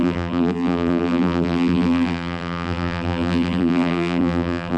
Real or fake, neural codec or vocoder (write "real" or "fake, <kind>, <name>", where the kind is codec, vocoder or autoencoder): fake, vocoder, BigVGAN v2